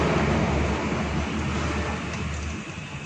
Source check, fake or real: real